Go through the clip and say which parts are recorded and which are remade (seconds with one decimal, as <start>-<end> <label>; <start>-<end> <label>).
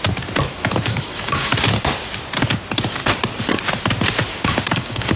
0.0-0.9 recorded; 0.9-1.5 remade; 1.5-4.3 recorded; 4.3-5.2 remade